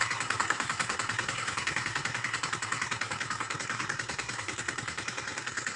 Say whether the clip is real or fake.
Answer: fake